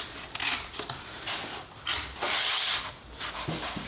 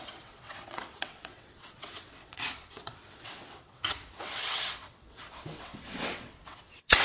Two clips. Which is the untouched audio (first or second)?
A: first